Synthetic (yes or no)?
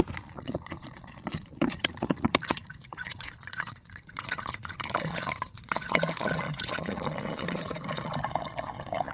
yes